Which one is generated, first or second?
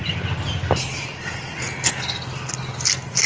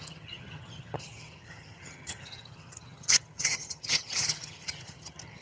second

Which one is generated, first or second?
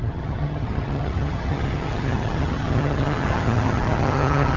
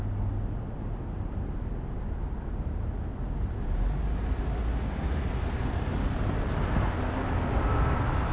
first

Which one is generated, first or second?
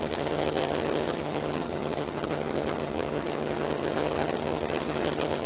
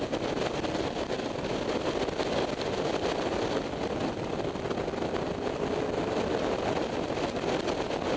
first